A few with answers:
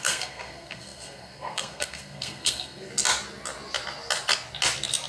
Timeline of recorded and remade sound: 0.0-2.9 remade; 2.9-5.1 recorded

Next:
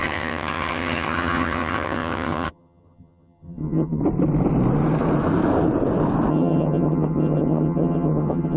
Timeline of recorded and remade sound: 0.0-4.0 remade; 4.0-6.3 recorded; 6.3-8.6 remade